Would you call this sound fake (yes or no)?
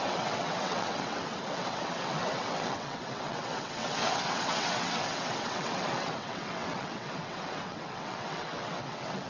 yes